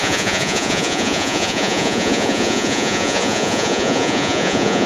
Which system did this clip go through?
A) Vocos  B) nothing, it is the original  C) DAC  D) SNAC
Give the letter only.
A